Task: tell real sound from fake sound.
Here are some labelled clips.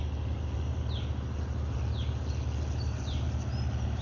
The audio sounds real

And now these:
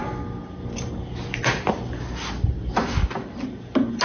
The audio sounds real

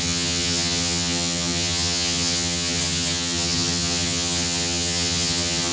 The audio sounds fake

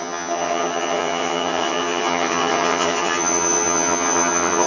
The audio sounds fake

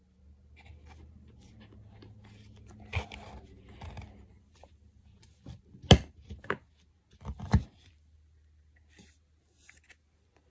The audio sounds real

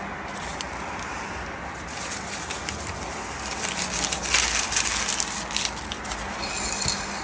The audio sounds real